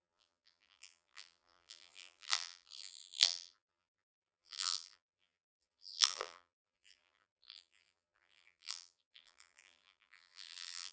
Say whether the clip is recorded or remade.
remade